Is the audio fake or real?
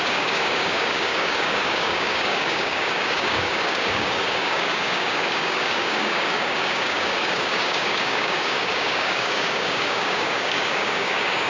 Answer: fake